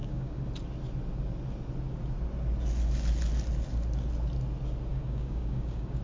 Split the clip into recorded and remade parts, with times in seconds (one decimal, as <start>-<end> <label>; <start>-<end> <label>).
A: 0.0-0.5 remade; 0.5-4.9 recorded; 4.9-6.0 remade